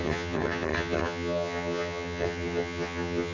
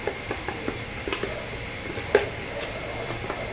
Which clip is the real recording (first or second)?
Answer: second